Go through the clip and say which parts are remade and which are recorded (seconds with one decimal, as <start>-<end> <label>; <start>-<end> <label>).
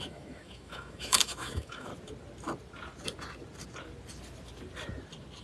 0.0-1.9 remade; 1.9-5.4 recorded